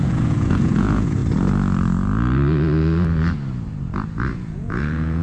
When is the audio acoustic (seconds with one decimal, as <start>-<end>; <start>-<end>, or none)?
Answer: 1.2-4.3